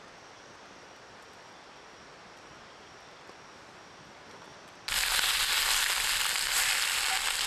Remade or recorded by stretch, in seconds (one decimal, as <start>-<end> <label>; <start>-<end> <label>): 0.0-7.5 recorded